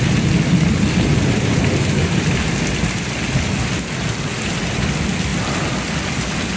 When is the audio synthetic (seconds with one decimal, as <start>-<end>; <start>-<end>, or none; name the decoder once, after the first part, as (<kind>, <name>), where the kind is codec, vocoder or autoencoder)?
none